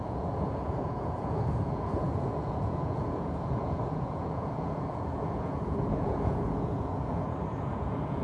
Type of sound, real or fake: fake